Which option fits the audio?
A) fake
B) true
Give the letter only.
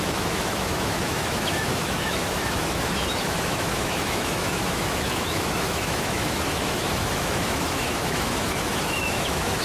A